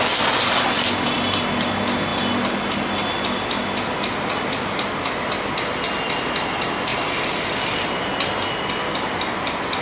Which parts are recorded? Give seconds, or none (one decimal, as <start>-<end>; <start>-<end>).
0.0-9.8